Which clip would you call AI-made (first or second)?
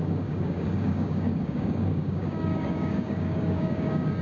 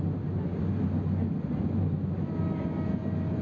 first